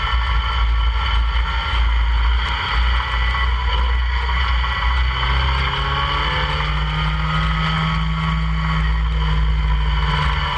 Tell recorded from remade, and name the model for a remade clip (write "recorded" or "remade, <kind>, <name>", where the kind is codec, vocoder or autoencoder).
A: recorded